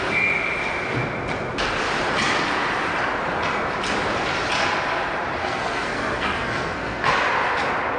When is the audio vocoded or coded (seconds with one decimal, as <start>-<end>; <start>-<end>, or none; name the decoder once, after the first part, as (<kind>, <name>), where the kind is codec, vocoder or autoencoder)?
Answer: 5.4-7.1 (codec, SNAC)